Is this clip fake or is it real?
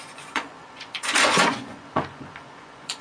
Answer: fake